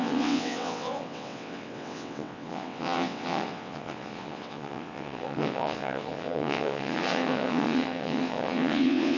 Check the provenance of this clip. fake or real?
fake